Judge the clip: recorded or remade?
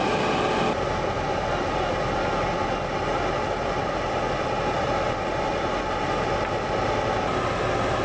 recorded